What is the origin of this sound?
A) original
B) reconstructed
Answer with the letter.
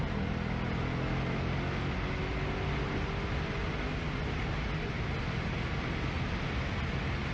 A